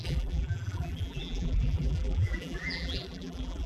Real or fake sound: fake